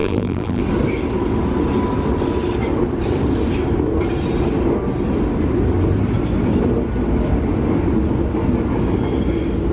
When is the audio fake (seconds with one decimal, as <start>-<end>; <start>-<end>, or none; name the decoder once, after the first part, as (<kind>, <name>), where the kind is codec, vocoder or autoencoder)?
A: 0.0-0.6 (vocoder, BigVGAN v2)